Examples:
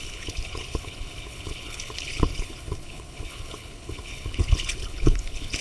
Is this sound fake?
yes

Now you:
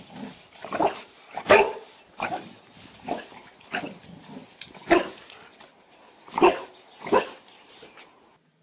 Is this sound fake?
yes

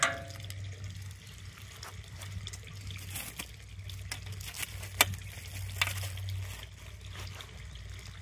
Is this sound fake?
no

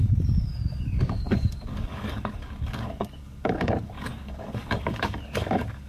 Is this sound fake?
yes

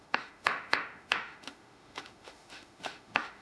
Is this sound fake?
yes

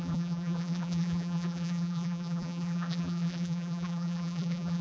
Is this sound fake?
yes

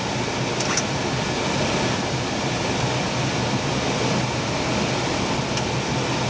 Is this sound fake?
no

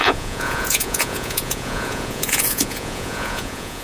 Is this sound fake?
yes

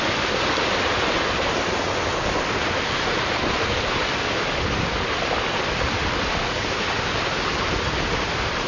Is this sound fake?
no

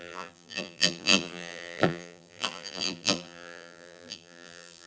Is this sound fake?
yes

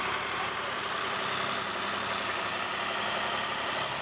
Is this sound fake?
no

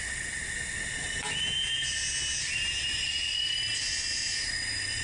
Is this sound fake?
no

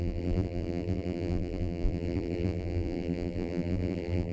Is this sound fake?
yes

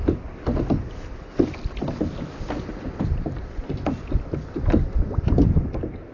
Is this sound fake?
no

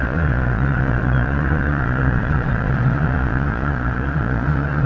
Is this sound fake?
yes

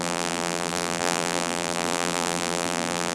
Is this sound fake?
yes